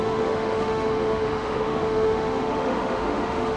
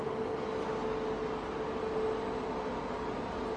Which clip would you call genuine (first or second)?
second